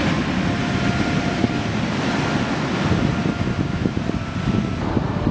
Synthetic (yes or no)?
no